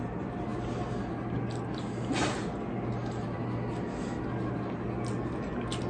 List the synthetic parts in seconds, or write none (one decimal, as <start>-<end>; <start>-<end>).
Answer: none